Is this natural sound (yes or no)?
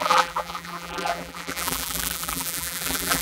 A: no